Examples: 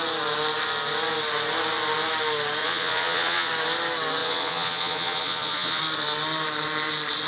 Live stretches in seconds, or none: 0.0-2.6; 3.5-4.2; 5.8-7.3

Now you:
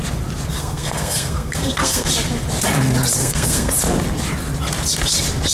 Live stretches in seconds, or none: 0.0-0.6; 2.1-3.2; 3.7-5.5

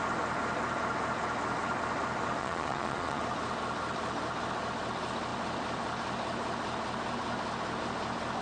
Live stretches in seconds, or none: 0.0-2.4; 3.2-8.4

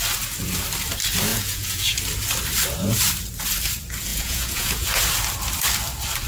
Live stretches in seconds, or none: 0.0-1.3; 2.0-4.1; 5.0-6.3

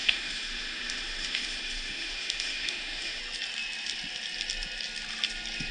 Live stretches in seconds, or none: 3.2-5.7

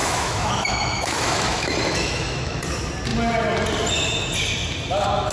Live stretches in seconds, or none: 2.6-5.3

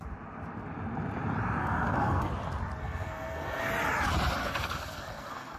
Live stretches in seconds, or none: 0.0-1.6; 2.3-2.8; 3.7-4.4